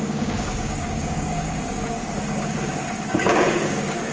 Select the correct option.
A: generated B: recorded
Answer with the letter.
A